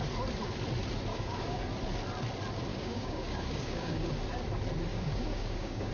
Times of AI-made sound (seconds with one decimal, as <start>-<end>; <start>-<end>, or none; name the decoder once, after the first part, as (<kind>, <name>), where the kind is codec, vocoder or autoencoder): 1.1-1.6 (codec, DAC); 2.7-4.1; 4.9-5.9